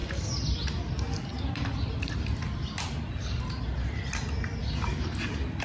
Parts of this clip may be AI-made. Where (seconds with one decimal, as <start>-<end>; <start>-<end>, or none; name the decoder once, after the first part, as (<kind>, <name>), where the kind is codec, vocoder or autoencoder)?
1.3-3.6 (vocoder, BigVGAN v2); 4.6-5.6